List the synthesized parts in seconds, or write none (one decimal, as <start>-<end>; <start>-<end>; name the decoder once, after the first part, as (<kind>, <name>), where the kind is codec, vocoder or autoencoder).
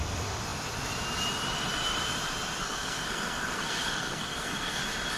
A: 2.6-4.8 (codec, SNAC)